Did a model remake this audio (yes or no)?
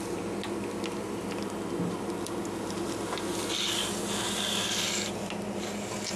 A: no